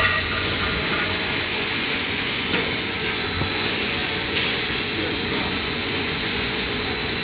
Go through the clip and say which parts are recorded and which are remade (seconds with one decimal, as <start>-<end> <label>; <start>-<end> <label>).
0.0-7.2 remade